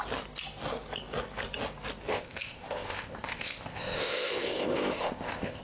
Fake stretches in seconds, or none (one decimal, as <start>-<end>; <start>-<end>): 2.1-5.6